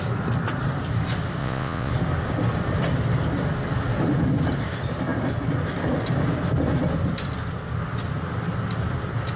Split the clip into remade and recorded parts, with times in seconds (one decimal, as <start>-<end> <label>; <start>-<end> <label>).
0.0-1.4 recorded; 1.4-1.9 remade; 1.9-9.4 recorded